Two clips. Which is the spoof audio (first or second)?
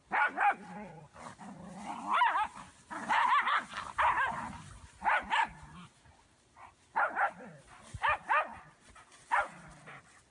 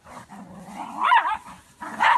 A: second